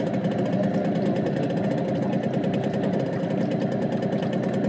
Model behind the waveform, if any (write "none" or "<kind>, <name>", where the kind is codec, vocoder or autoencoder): none